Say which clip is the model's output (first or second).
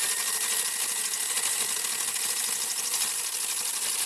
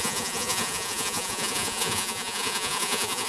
second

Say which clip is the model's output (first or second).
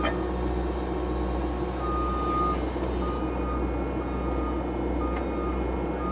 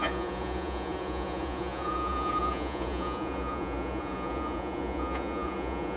second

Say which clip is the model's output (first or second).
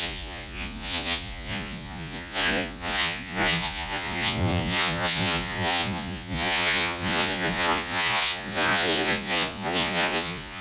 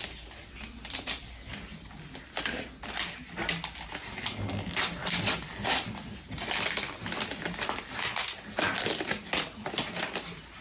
first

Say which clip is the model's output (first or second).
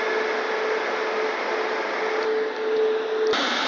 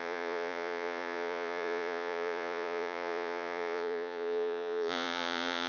second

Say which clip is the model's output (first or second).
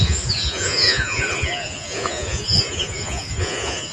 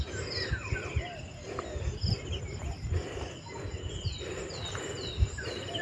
first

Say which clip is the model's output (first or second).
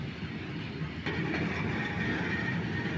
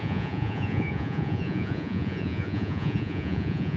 second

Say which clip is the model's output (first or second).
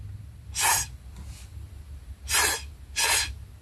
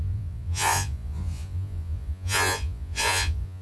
second